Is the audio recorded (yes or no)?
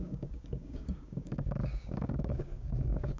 no